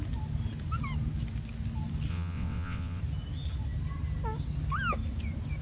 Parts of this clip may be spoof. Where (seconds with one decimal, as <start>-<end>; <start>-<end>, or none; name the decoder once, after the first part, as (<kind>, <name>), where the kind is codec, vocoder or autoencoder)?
2.1-3.0 (vocoder, WaveNeXt)